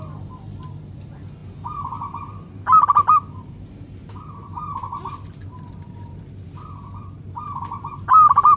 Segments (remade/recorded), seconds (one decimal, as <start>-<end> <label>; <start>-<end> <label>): 0.0-8.6 recorded